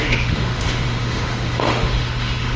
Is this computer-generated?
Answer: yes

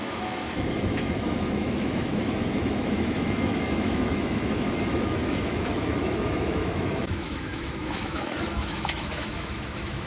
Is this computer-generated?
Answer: yes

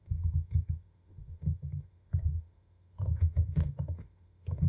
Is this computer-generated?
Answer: yes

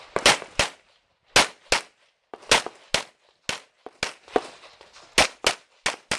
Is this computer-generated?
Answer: no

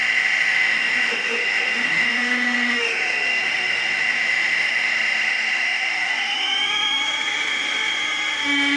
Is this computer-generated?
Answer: yes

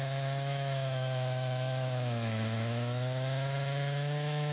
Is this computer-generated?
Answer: yes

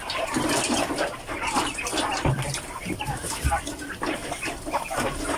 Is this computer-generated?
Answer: no